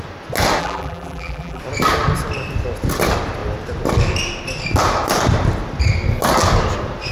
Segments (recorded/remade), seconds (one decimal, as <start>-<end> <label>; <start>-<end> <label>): 0.0-0.6 recorded; 0.6-1.6 remade; 1.6-7.1 recorded